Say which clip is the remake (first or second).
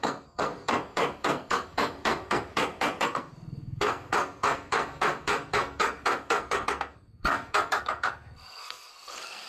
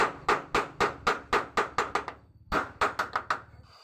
first